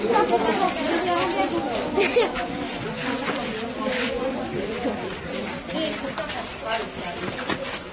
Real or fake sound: fake